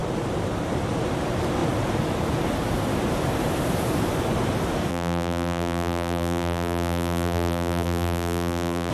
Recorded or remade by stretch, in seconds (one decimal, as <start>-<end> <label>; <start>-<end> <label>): 0.0-4.9 recorded; 4.9-8.9 remade